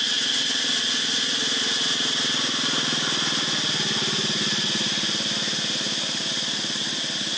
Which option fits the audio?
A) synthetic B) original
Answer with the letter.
B